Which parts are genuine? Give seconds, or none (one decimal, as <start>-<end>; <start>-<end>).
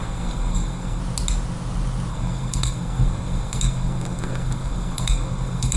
1.0-2.1